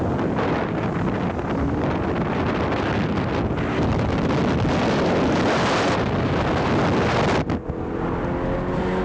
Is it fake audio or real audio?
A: real